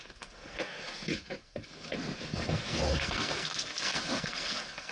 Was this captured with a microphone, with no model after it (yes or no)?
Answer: no